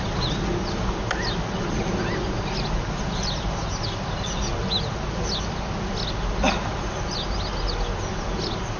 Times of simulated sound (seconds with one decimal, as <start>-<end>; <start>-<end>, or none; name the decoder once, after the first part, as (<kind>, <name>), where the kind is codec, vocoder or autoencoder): none